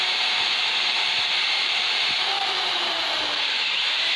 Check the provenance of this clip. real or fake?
fake